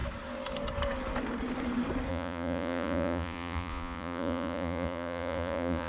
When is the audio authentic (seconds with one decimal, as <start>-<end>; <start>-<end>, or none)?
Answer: 0.0-2.1